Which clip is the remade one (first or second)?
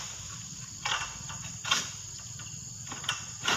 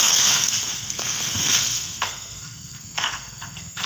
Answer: second